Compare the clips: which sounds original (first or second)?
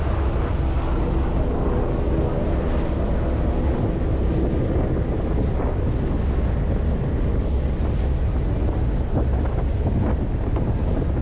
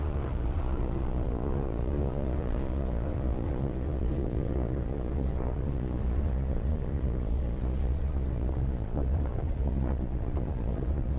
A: first